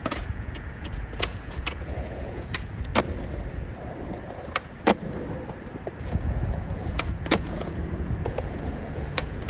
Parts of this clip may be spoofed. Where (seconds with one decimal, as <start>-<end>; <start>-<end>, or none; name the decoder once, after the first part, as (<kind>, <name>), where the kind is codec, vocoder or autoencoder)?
0.0-2.9 (vocoder, Vocos); 6.0-9.5